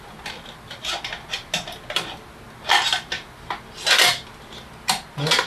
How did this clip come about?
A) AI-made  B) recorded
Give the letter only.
B